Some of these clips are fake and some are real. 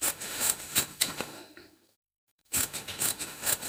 fake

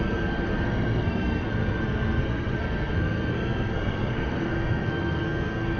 fake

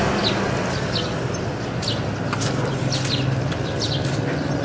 real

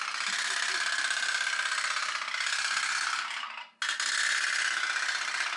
real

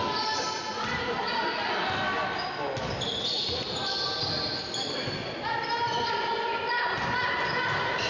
real